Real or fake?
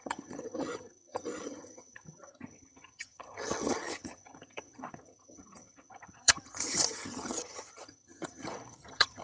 fake